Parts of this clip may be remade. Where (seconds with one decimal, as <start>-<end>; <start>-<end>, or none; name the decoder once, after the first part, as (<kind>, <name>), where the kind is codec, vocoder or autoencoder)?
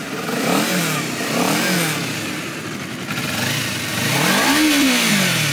3.9-5.1 (vocoder, BigVGAN v2)